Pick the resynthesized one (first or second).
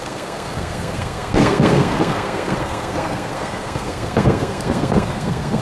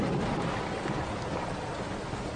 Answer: first